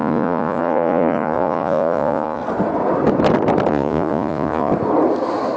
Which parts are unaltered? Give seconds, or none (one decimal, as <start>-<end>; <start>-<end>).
2.4-3.7; 4.7-5.6